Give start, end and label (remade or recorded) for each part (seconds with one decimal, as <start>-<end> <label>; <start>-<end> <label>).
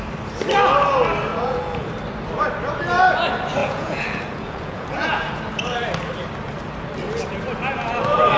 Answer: 0.0-1.3 recorded; 1.3-1.9 remade; 1.9-3.6 recorded; 3.6-5.4 remade; 5.4-8.4 recorded